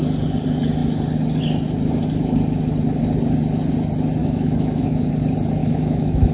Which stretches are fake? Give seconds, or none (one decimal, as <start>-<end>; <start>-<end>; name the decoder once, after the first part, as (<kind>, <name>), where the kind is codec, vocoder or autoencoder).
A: 4.2-5.1 (autoencoder, DAC-VAE); 5.6-6.3